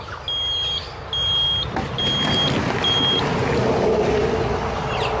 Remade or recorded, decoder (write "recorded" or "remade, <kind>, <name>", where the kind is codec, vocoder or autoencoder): recorded